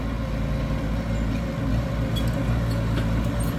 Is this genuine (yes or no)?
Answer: yes